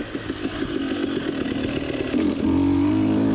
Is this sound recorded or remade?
recorded